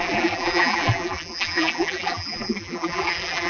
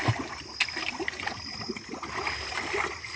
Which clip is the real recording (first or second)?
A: second